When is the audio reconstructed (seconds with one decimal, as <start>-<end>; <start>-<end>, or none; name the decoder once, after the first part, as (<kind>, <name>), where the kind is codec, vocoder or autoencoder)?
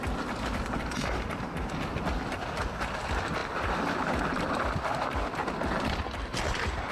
none